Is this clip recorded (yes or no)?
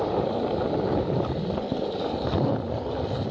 yes